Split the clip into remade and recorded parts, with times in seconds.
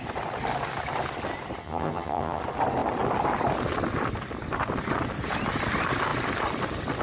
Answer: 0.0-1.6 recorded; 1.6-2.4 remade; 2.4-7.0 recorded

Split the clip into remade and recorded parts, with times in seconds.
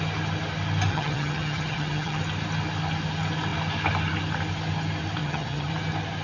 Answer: 0.0-0.9 recorded; 0.9-2.2 remade; 2.2-5.2 recorded; 5.2-5.7 remade; 5.7-6.2 recorded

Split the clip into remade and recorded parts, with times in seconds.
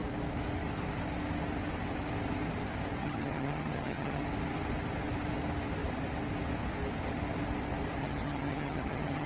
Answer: 0.0-3.0 recorded; 3.0-4.2 remade; 4.2-8.0 recorded; 8.0-9.3 remade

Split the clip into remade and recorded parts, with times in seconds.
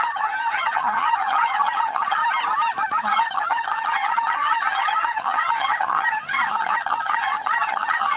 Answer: 0.0-2.2 remade; 2.2-3.0 recorded; 3.0-8.2 remade